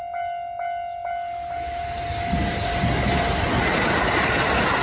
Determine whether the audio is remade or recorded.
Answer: recorded